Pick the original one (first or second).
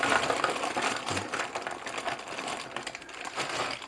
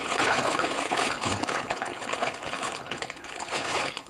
first